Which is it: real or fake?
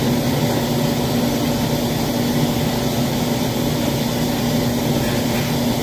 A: real